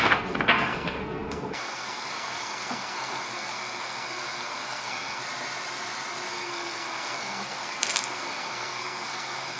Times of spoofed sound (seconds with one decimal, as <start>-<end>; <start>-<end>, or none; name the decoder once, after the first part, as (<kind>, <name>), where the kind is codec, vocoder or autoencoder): 0.0-5.2 (codec, SNAC); 6.3-9.6